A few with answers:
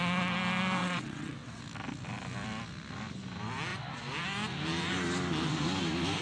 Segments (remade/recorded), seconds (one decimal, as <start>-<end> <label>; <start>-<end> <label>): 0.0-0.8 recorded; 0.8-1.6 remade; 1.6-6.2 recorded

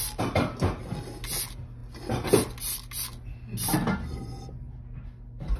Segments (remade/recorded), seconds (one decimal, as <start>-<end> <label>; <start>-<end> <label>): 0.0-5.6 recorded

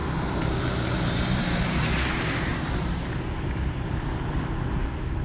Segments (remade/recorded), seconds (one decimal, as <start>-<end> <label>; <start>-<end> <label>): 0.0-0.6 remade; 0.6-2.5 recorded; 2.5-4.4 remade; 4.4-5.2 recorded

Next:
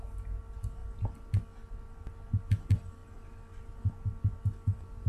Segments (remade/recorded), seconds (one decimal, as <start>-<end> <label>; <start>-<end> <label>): 0.0-5.1 recorded

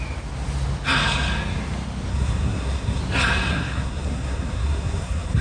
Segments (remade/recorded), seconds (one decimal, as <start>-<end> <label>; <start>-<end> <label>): 0.0-2.1 recorded; 2.1-3.0 remade; 3.0-3.5 recorded; 3.5-5.4 remade

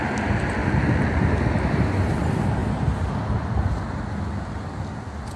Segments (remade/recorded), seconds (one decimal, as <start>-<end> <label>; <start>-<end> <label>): 0.0-5.4 recorded

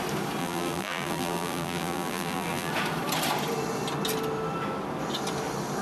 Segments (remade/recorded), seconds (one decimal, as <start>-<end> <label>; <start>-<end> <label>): 0.0-0.4 recorded; 0.4-2.7 remade; 2.7-5.8 recorded